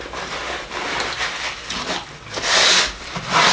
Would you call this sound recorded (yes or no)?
yes